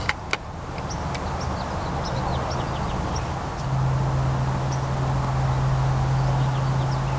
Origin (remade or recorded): recorded